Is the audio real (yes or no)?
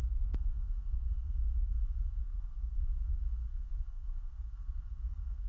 no